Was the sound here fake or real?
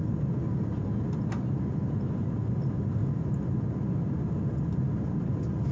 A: real